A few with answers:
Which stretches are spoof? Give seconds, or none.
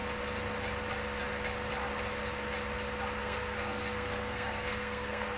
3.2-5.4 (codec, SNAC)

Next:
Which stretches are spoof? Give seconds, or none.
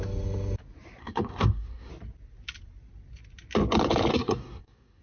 1.0-1.9 (codec, SNAC); 4.1-5.0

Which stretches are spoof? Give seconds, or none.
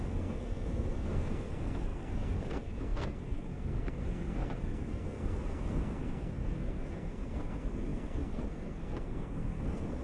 0.0-10.0 (codec, SNAC)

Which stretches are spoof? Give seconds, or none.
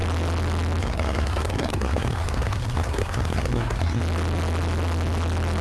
0.8-4.0 (codec, SNAC)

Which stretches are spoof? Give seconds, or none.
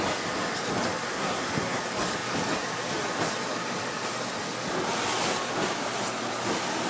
1.1-1.8 (codec, SNAC)